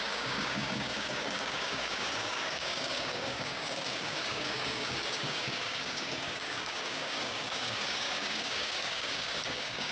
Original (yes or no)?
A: no